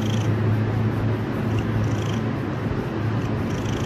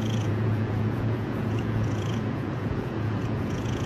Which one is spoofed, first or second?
second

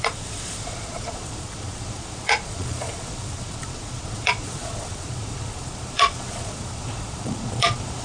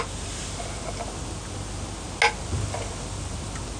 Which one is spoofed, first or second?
first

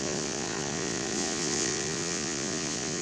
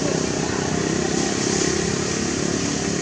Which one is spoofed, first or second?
first